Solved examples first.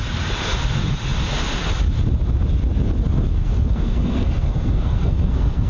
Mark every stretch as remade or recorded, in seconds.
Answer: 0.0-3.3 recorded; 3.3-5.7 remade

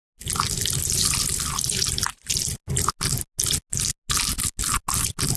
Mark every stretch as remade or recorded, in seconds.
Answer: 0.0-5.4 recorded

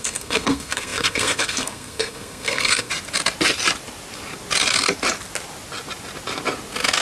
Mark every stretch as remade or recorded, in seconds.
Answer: 0.0-2.9 remade; 2.9-7.0 recorded

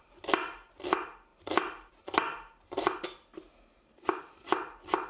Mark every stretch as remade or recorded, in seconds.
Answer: 0.0-5.1 recorded

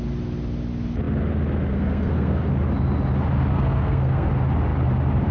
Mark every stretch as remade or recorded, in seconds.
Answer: 0.0-1.7 recorded; 1.7-2.5 remade; 2.5-3.5 recorded; 3.5-4.3 remade; 4.3-5.3 recorded

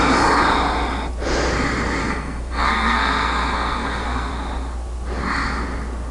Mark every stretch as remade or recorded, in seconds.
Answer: 0.0-2.0 recorded; 2.0-4.3 remade; 4.3-6.1 recorded

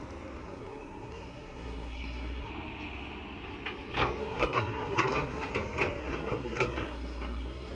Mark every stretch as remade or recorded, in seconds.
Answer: 0.0-0.4 recorded; 0.4-2.5 remade; 2.5-4.2 recorded; 4.2-5.5 remade; 5.5-6.0 recorded; 6.0-7.7 remade

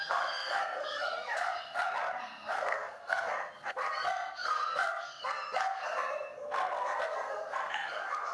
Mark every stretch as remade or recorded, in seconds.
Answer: 0.0-8.3 remade